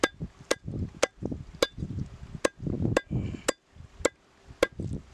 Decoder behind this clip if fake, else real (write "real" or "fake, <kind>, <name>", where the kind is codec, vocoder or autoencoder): real